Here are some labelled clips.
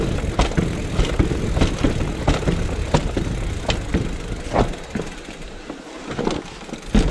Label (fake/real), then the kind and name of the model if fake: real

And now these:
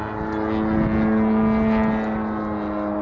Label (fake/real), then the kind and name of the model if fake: real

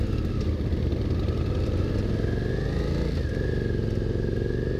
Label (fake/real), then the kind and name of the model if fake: real